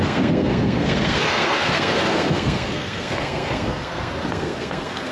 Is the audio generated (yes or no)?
yes